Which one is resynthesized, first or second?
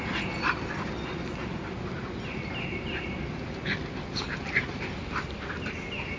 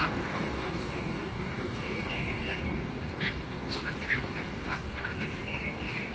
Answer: second